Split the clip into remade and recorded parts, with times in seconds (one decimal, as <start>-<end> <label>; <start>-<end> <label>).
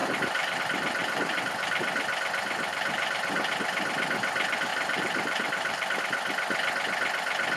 0.0-0.6 remade; 0.6-1.0 recorded; 1.0-1.8 remade; 1.8-2.7 recorded; 2.7-3.5 remade; 3.5-4.7 recorded; 4.7-6.0 remade; 6.0-7.6 recorded